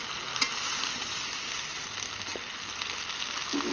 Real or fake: real